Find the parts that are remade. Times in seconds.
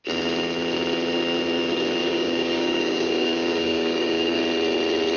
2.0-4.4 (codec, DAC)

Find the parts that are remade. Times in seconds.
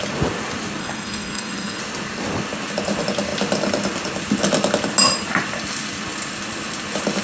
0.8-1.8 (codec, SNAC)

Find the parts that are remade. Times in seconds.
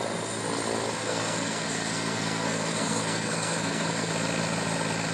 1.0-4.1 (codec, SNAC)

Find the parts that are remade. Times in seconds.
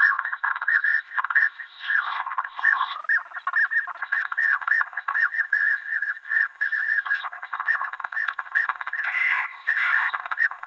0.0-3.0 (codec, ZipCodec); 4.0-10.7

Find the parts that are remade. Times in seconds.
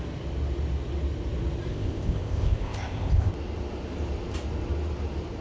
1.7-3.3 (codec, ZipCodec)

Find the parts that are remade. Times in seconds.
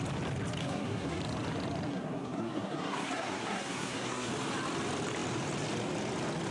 0.6-1.2 (codec, SNAC); 1.9-4.3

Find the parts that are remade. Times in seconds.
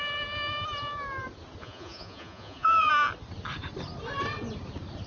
1.6-2.9 (vocoder, Vocos)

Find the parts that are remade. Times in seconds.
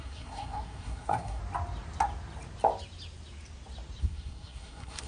0.0-1.4 (codec, SNAC); 4.0-5.1